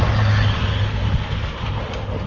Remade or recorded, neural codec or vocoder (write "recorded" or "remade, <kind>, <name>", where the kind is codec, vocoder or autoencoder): recorded